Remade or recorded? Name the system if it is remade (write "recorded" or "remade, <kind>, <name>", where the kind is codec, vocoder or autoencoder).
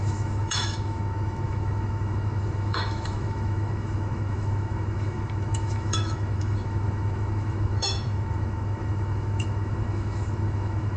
remade, autoencoder, DAC-VAE